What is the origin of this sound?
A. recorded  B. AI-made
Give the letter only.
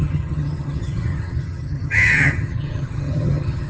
B